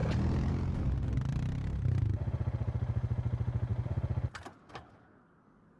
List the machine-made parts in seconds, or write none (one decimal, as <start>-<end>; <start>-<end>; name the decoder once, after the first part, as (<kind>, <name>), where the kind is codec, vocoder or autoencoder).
none